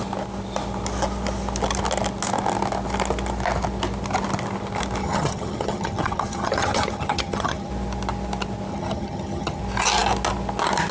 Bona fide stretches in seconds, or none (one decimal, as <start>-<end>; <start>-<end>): 0.0-5.0; 7.7-8.7; 9.6-10.9